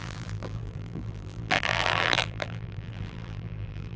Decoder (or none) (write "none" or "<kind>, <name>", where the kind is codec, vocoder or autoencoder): vocoder, BigVGAN v2